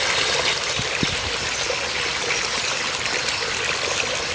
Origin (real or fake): real